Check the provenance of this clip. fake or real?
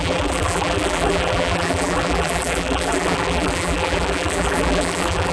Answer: fake